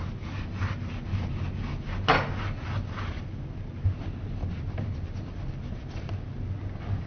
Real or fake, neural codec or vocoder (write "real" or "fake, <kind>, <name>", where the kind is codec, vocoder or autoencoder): real